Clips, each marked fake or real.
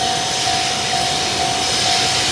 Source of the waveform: real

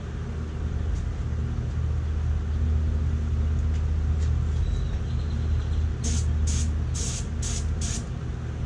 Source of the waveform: real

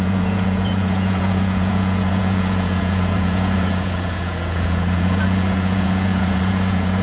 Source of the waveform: fake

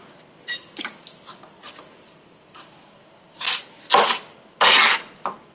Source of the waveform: real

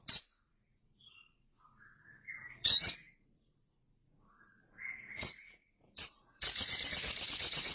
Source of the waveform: fake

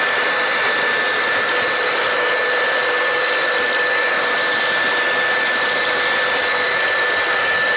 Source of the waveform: real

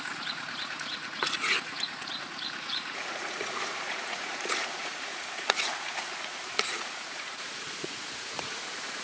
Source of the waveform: fake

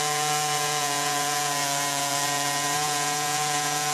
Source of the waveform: fake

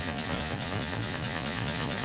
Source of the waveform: fake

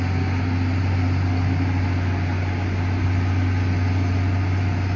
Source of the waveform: real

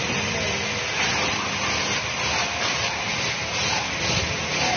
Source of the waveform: real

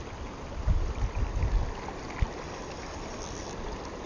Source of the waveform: real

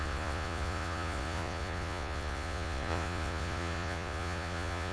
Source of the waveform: fake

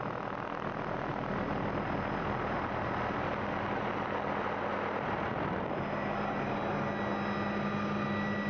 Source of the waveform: real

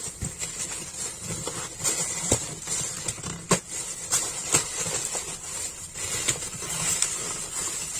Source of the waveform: real